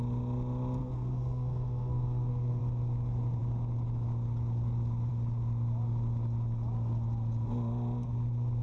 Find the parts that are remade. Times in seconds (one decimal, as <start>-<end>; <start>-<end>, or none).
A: 0.8-2.6